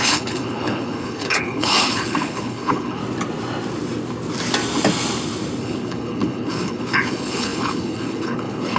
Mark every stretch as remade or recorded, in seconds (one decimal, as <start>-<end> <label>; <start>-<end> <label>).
0.0-3.0 remade; 3.0-5.6 recorded; 5.6-8.8 remade